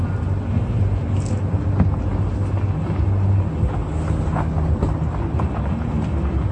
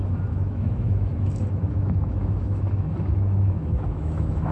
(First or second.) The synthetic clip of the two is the second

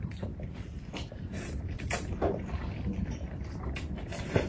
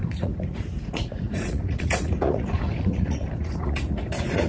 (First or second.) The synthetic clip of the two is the second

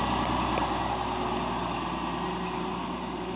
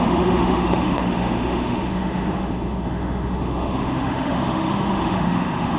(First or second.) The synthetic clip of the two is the second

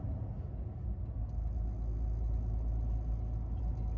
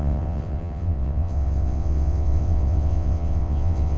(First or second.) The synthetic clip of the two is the second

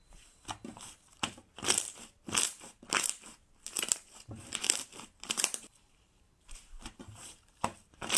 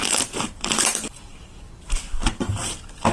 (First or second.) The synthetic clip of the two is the first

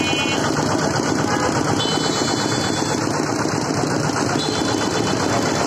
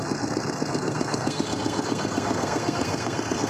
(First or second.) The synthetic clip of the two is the second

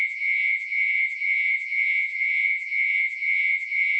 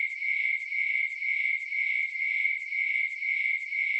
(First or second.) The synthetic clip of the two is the first